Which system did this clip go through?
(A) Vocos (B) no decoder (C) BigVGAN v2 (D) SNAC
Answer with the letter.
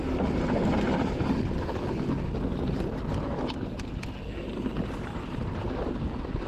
B